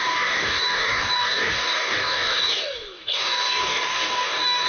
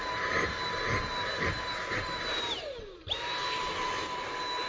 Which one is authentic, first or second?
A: second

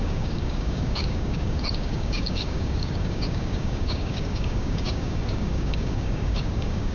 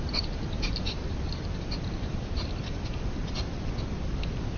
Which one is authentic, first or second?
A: second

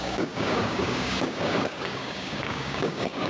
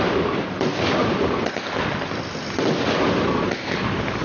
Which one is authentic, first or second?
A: second